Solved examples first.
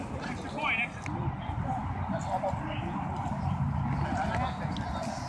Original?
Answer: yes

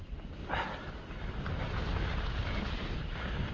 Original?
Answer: yes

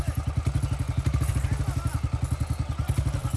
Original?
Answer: yes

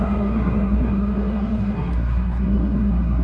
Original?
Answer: no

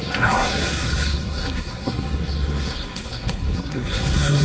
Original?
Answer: no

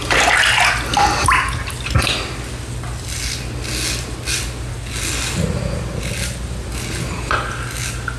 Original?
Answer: yes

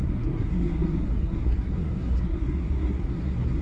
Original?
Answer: no